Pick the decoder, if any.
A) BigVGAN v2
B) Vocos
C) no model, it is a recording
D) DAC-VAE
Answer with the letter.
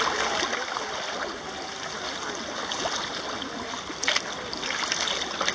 C